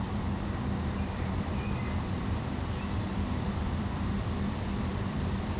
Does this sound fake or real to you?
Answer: fake